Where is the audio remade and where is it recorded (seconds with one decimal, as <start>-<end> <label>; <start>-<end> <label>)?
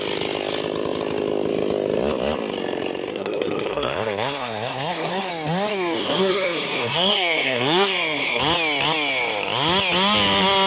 0.0-3.1 recorded; 3.1-5.3 remade; 5.3-5.7 recorded; 5.7-8.4 remade; 8.4-10.7 recorded